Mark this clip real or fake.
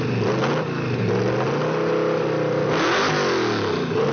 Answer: real